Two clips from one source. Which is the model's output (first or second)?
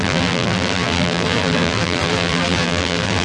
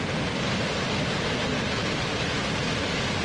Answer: first